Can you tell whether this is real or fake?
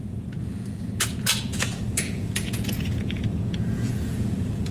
fake